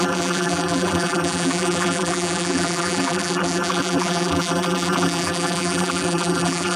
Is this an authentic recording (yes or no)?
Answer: no